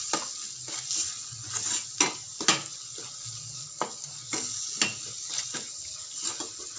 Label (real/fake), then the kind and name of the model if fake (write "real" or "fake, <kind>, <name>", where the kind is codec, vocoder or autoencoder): real